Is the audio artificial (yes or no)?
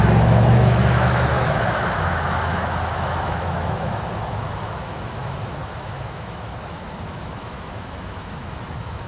yes